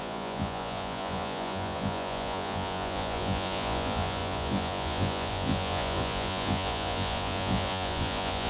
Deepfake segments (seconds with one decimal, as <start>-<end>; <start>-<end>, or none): 0.0-8.5